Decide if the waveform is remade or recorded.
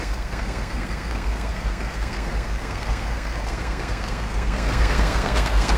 remade